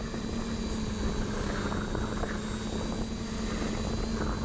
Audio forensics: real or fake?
real